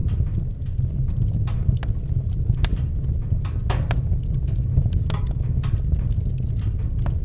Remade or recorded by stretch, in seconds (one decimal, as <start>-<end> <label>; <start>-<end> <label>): 0.0-7.2 recorded